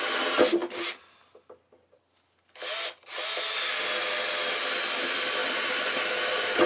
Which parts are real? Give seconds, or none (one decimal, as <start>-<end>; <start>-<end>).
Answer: 0.0-6.7